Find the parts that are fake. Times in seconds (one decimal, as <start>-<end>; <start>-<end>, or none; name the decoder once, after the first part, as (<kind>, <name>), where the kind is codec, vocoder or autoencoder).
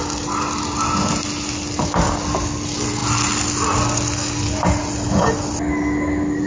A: none